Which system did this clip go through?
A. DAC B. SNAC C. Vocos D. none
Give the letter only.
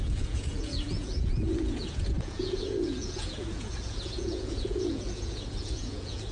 C